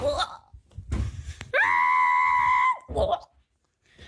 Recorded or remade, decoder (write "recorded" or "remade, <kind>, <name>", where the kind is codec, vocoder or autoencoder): recorded